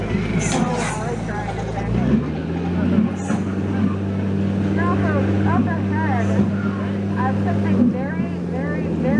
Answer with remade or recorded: recorded